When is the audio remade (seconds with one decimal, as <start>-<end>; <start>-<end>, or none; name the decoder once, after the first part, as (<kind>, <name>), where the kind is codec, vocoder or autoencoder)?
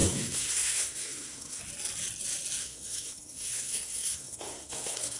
0.0-1.6 (codec, SNAC); 2.6-5.2